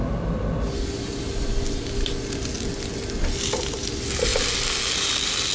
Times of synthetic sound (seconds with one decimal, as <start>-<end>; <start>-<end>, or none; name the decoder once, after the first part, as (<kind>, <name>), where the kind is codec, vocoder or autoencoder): none

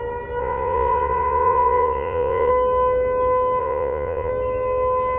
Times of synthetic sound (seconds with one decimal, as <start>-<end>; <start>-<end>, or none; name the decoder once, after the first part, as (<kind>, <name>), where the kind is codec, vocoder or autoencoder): 0.4-2.5 (vocoder, Vocos); 3.6-4.3

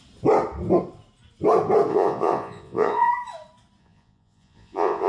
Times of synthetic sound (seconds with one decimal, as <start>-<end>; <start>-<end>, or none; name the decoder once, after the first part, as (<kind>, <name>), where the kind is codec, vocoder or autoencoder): 1.9-3.1 (vocoder, Vocos); 3.8-5.1

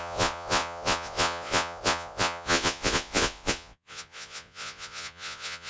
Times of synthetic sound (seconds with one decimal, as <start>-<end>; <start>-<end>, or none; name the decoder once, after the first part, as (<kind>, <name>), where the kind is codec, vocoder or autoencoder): 0.0-5.7 (vocoder, Vocos)

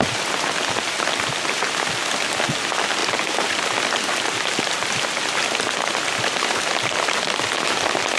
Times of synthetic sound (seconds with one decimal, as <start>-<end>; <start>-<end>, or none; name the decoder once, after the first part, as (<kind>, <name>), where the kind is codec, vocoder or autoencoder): none

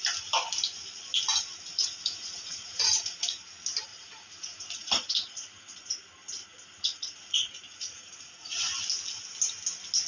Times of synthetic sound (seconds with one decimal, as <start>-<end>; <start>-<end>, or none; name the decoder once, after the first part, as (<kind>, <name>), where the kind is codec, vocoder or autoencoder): 1.8-3.4 (vocoder, Vocos); 3.9-5.9; 6.5-8.6